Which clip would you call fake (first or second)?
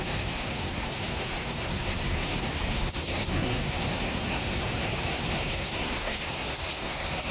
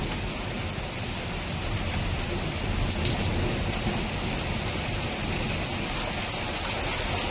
first